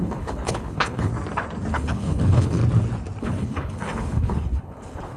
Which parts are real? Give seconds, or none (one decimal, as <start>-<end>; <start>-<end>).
1.1-1.7; 2.6-3.2